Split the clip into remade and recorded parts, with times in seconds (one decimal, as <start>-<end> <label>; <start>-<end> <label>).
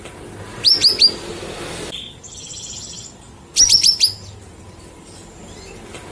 0.0-6.1 recorded